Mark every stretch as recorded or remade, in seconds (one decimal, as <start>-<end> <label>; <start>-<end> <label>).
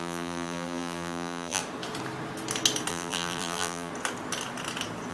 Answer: 0.0-1.6 remade; 1.6-2.9 recorded; 2.9-3.9 remade; 3.9-5.1 recorded